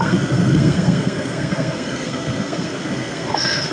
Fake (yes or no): yes